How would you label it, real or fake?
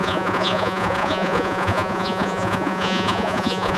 fake